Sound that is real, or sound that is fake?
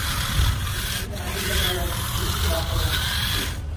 real